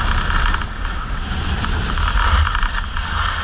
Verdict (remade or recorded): recorded